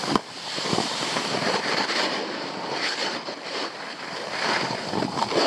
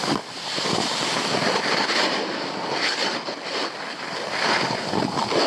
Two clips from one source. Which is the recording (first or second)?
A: second